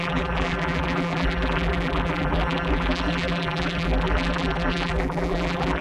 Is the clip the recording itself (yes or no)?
no